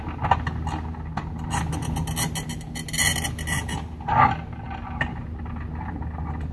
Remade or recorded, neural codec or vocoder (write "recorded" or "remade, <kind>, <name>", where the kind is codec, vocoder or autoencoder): recorded